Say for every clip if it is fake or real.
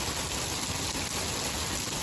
real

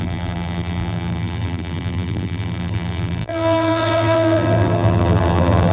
fake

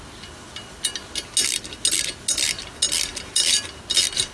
real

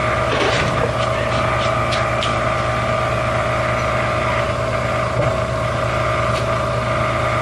real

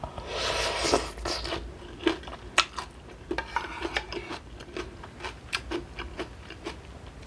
real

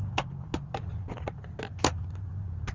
real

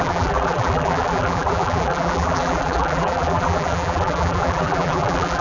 fake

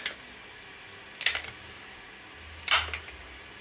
real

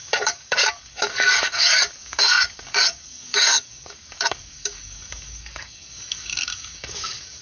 fake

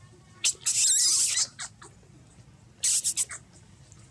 real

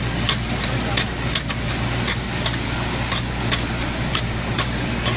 real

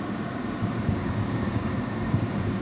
fake